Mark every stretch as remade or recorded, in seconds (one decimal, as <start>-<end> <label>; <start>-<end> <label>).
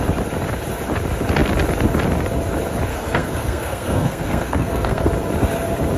0.0-2.9 recorded; 2.9-5.1 remade; 5.1-6.0 recorded